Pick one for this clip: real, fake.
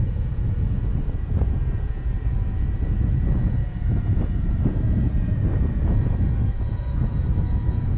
fake